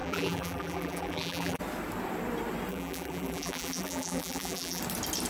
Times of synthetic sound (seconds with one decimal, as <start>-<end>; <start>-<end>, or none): 0.0-1.6; 2.7-4.8